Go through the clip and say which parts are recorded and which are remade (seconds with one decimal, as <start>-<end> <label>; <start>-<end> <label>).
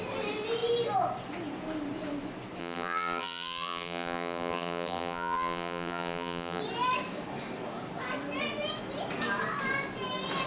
0.0-2.6 recorded; 2.6-6.6 remade; 6.6-10.5 recorded